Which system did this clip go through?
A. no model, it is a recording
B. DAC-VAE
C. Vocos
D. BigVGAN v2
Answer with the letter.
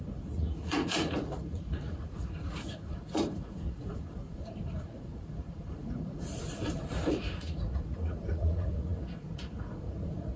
C